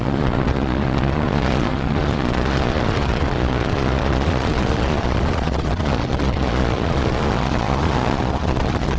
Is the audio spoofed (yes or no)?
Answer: yes